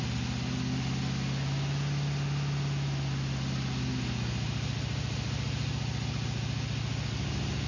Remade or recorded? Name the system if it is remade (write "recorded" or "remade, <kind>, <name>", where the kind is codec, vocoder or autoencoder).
recorded